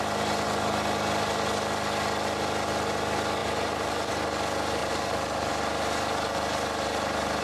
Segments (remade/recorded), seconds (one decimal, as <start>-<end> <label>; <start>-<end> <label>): 0.0-3.4 recorded; 3.4-4.1 remade; 4.1-4.8 recorded; 4.8-5.5 remade; 5.5-7.4 recorded